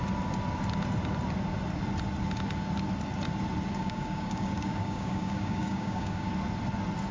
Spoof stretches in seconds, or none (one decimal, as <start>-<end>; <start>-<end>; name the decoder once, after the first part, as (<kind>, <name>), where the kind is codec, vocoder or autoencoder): 3.7-6.3 (codec, DAC)